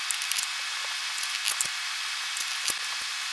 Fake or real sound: real